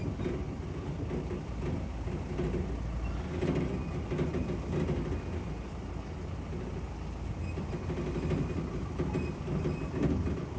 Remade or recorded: recorded